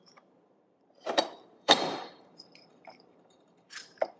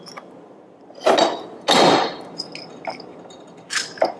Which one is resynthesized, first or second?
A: first